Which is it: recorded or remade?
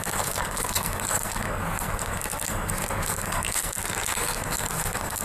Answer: remade